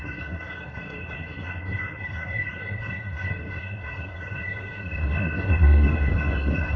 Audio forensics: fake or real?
fake